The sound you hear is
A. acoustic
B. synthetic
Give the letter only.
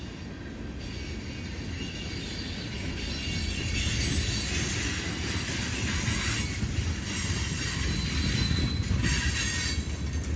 A